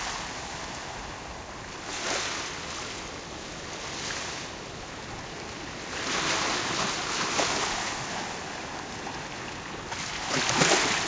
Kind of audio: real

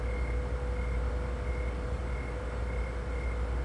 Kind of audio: real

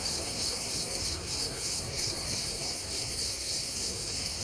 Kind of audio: fake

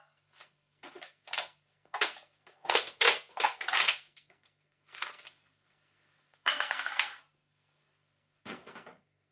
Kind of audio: fake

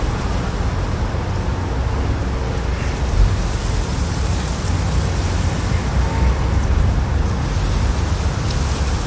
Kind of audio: real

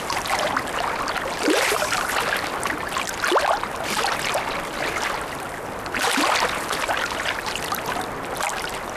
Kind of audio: real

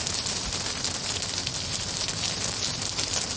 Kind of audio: real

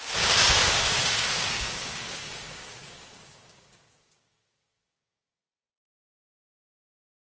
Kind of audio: fake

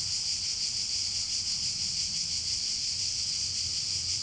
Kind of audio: real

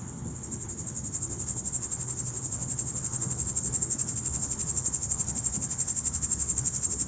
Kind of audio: fake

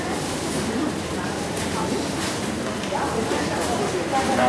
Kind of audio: fake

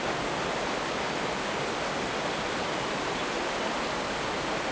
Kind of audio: real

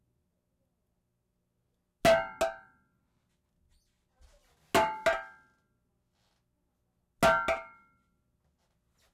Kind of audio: real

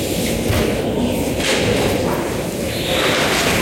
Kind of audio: real